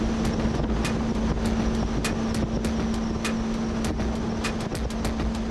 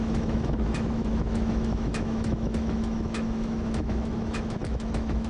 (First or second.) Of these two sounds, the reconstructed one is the second